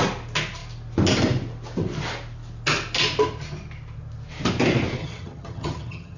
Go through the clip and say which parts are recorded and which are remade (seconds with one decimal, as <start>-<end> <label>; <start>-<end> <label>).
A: 0.0-5.0 recorded; 5.0-6.2 remade